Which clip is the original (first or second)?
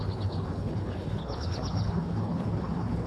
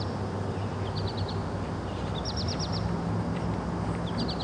second